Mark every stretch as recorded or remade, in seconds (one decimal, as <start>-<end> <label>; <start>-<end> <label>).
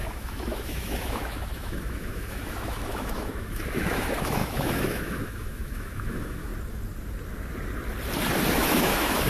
0.0-6.5 remade; 6.5-8.5 recorded; 8.5-9.3 remade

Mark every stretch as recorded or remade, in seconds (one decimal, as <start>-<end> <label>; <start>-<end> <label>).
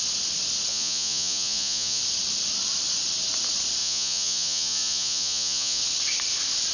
0.0-0.7 recorded; 0.7-2.0 remade; 2.0-3.8 recorded; 3.8-5.8 remade; 5.8-6.7 recorded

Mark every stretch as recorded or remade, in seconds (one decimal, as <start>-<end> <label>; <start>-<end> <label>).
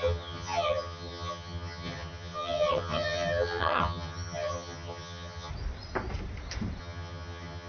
0.0-5.5 remade; 5.5-6.8 recorded; 6.8-7.7 remade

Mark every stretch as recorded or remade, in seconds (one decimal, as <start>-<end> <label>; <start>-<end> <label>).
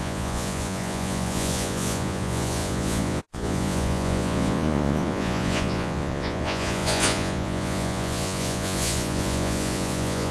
0.0-10.3 remade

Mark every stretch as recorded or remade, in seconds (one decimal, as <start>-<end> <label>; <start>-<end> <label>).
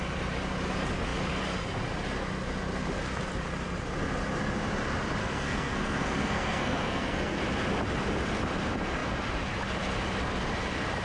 0.0-5.2 recorded; 5.2-7.4 remade; 7.4-11.0 recorded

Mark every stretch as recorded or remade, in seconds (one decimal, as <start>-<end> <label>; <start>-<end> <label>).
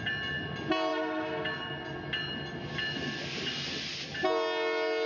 0.0-5.1 recorded